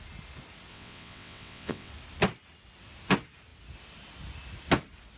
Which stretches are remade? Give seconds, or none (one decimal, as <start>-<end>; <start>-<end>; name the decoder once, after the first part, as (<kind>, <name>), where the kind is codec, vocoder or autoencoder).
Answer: 0.7-1.9 (vocoder, WaveNeXt)